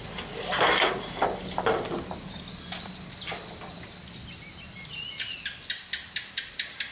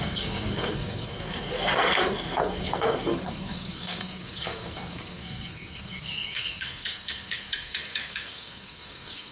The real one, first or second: first